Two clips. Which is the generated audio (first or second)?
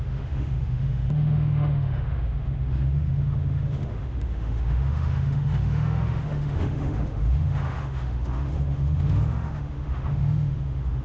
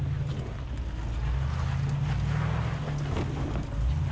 first